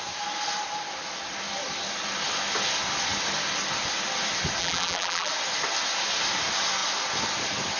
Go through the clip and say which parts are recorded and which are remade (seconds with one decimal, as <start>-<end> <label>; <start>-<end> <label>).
0.0-4.6 recorded; 4.6-5.3 remade; 5.3-7.8 recorded